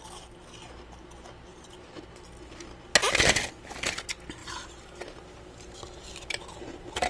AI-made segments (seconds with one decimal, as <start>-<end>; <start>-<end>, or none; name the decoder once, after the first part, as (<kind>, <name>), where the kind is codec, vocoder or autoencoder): 1.5-2.0 (vocoder, BigVGAN v2); 4.4-7.1